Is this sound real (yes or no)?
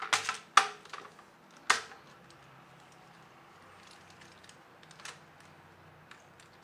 yes